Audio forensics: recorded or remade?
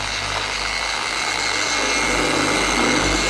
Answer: recorded